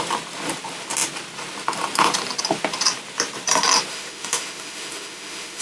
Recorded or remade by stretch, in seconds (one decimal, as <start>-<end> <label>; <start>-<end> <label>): 0.0-3.9 recorded; 3.9-5.6 remade